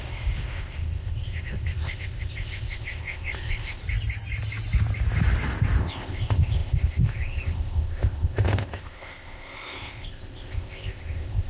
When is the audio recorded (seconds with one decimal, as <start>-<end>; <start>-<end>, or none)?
3.8-5.8